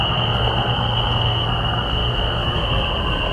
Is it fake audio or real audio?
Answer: fake